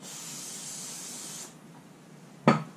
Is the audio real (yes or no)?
yes